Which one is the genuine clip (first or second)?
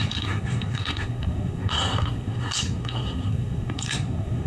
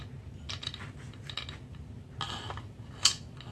second